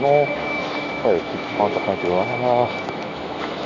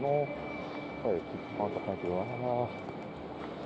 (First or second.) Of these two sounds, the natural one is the second